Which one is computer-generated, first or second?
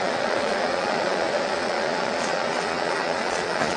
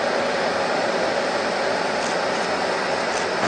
first